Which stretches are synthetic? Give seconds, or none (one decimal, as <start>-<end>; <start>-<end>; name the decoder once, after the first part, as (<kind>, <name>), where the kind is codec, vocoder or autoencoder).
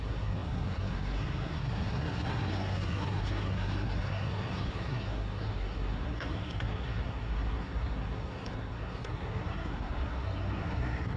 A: 0.0-11.2 (codec, SNAC)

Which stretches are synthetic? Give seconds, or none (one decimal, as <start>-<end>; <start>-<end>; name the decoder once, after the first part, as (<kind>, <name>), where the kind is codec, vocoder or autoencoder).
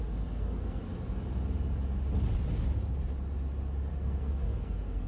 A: 0.0-0.8 (codec, SNAC); 3.9-5.1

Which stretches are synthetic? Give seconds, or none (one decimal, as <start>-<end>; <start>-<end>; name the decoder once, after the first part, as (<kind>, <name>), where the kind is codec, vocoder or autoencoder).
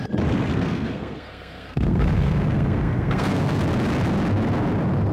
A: 0.5-3.6 (codec, SNAC)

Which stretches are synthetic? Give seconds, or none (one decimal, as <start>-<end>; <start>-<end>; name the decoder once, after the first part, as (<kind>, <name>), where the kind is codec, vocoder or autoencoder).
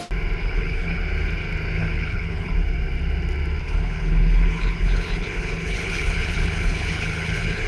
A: 0.4-1.0 (codec, HILCodec); 1.8-2.5; 3.6-7.7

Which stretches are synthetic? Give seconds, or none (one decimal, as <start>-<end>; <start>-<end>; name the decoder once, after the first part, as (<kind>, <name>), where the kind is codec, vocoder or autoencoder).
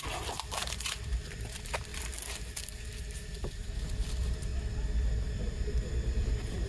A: 0.0-1.9 (vocoder, BigVGAN v2); 3.0-4.5; 5.4-6.7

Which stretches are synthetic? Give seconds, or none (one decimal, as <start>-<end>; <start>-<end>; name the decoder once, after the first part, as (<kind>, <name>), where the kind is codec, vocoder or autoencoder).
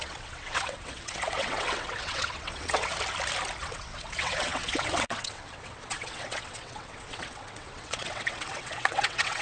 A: 0.0-2.9 (vocoder, WaveNeXt); 3.6-9.4